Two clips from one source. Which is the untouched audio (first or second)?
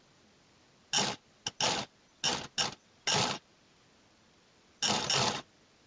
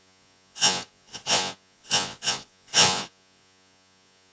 first